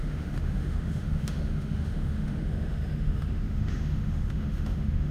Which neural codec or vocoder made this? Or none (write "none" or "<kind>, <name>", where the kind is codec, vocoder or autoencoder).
autoencoder, DAC-VAE